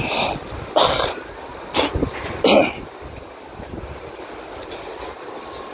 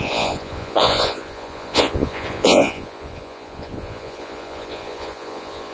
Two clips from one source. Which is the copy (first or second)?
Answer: second